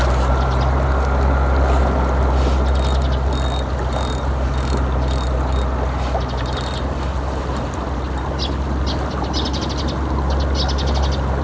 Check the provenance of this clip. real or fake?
real